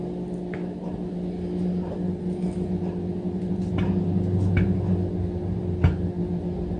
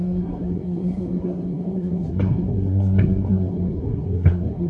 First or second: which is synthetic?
second